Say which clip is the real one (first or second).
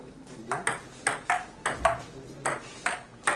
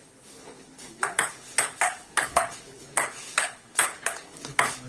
first